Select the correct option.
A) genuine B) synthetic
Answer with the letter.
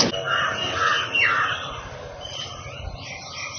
A